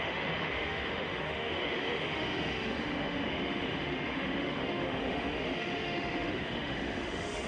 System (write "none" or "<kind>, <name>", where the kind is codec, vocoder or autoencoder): autoencoder, DAC-VAE